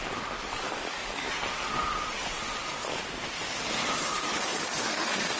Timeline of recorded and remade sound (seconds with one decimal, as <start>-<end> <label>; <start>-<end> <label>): 0.0-0.5 recorded; 0.5-1.3 remade; 1.3-4.2 recorded; 4.2-5.4 remade